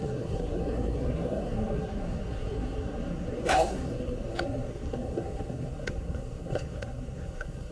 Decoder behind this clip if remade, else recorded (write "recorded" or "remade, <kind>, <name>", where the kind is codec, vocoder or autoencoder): remade, codec, SNAC